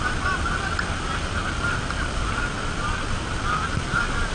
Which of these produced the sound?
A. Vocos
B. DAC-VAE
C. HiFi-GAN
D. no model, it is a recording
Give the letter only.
D